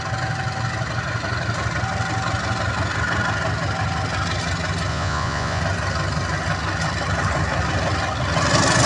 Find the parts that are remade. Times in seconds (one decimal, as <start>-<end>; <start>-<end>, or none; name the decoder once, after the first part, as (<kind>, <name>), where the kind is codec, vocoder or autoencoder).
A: 4.9-5.6 (vocoder, Vocos)